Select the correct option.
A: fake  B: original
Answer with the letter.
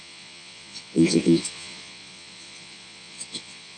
A